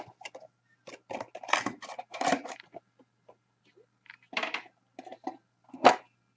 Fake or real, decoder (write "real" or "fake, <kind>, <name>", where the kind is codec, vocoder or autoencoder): real